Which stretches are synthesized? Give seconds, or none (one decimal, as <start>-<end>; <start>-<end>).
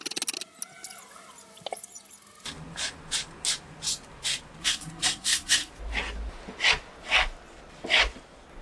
4.6-5.7